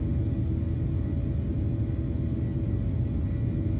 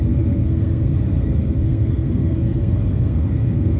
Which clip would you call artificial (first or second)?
second